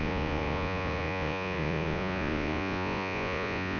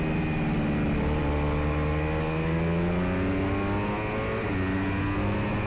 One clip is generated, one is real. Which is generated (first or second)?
first